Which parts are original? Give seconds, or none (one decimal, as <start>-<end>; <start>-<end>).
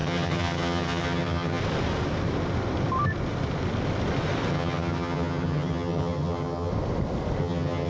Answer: 1.6-4.5; 6.7-7.4